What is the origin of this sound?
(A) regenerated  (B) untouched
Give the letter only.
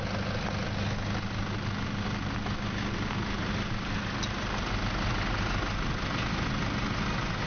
B